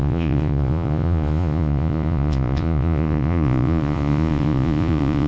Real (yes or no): no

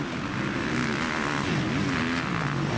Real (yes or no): yes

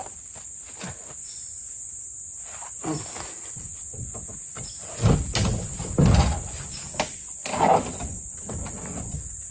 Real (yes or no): yes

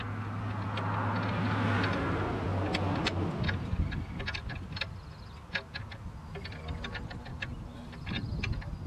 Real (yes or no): yes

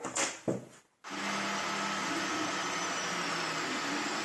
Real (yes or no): yes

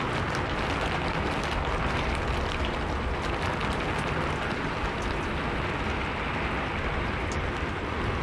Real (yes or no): yes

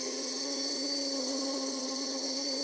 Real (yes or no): no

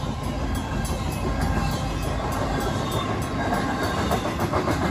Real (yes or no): yes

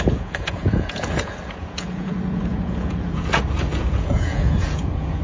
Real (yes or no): no